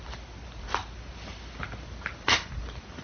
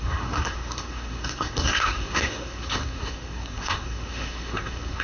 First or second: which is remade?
second